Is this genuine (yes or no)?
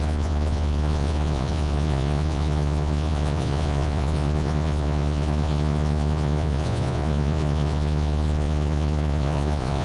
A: no